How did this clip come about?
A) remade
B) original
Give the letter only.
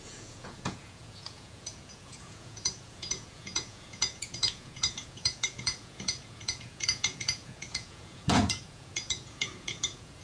A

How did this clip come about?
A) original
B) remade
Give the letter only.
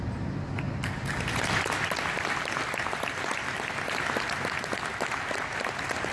A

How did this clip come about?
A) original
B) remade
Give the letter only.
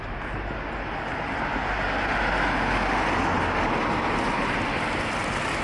A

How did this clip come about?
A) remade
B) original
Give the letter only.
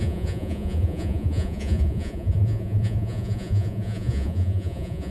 A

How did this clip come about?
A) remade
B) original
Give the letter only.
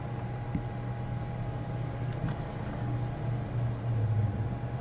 B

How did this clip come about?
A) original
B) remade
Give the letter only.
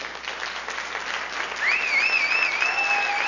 A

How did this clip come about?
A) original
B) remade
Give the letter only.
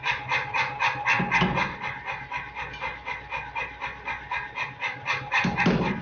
A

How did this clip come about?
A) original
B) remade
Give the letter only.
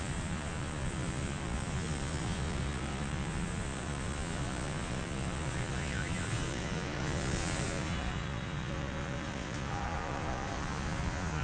B